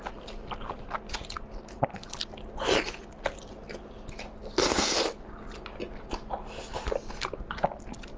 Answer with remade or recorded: recorded